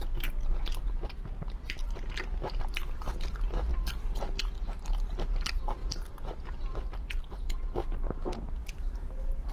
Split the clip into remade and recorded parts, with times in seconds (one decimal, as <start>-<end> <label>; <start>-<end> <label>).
0.0-9.5 recorded